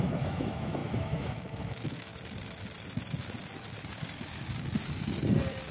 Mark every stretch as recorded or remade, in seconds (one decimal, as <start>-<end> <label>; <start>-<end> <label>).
0.0-2.1 remade; 2.1-5.7 recorded